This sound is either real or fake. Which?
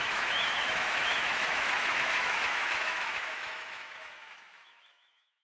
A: fake